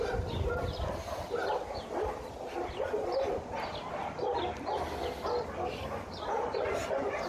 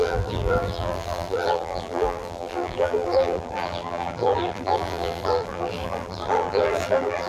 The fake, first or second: second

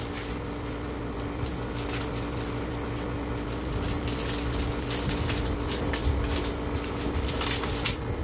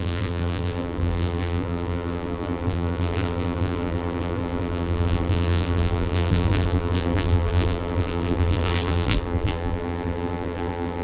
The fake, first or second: second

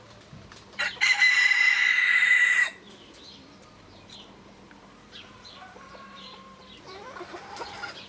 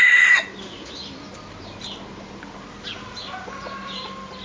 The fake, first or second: first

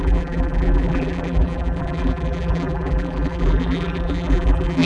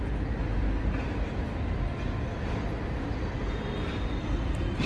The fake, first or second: first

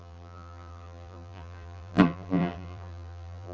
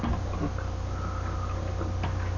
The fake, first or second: first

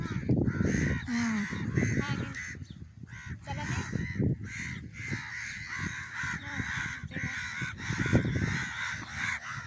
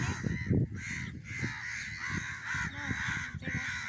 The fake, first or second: first